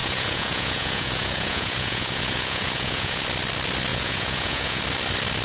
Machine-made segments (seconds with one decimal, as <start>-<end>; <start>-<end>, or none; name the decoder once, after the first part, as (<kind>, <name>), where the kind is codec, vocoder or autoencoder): 0.0-3.2 (vocoder, Vocos); 3.9-4.8